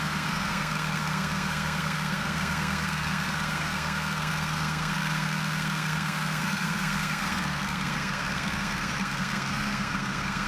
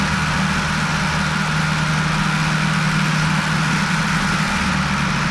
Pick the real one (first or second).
second